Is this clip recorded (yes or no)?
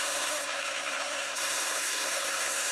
no